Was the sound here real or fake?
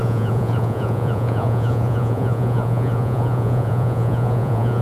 fake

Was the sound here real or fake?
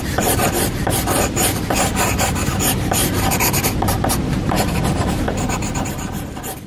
fake